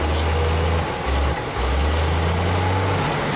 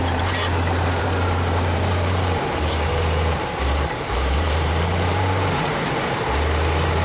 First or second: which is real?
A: first